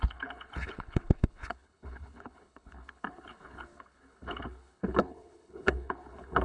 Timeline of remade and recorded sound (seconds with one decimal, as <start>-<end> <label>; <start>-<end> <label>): 0.0-6.4 remade